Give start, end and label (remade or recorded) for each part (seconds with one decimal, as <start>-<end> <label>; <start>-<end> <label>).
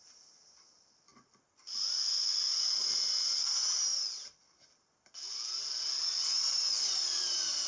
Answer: 0.0-7.7 recorded